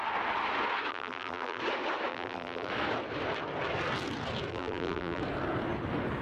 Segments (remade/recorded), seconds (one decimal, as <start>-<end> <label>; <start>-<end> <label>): 0.0-0.9 recorded; 0.9-1.6 remade; 1.6-2.1 recorded; 2.1-2.7 remade; 2.7-4.5 recorded; 4.5-5.2 remade; 5.2-6.2 recorded